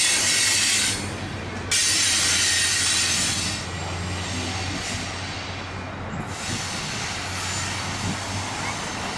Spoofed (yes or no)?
no